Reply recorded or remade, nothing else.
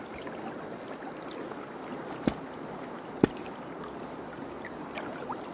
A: remade